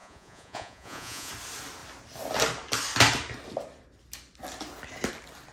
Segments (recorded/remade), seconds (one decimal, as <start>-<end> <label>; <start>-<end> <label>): 0.0-1.3 remade; 1.3-5.5 recorded